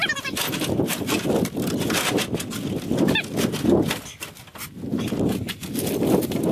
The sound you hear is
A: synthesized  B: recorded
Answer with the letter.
B